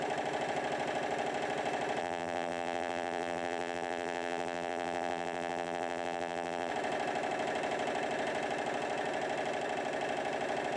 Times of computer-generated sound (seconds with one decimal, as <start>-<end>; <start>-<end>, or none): 2.0-6.7